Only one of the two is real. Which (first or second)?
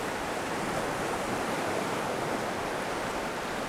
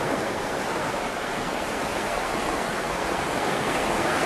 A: first